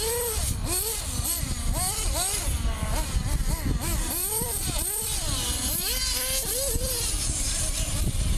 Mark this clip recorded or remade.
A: recorded